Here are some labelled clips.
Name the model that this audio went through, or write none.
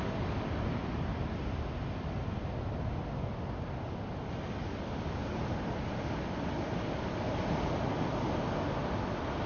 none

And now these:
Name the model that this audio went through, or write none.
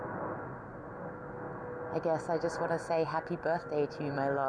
none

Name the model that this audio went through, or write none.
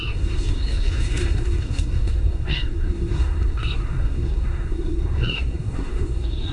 codec, SNAC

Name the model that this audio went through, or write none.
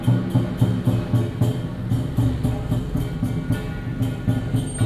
none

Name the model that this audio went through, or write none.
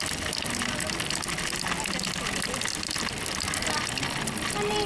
none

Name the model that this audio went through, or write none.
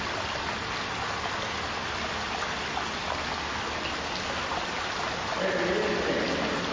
none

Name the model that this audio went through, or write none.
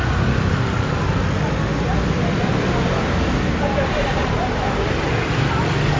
none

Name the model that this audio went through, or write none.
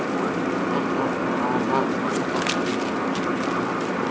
none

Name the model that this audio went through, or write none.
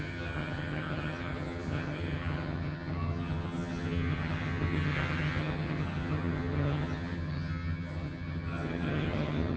vocoder, HiFi-GAN